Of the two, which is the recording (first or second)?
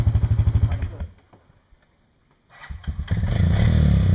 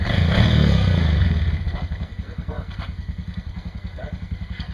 first